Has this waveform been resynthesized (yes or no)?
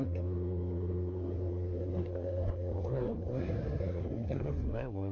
yes